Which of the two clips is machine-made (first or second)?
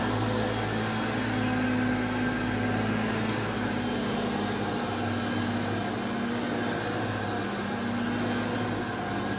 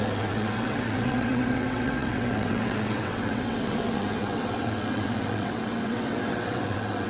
second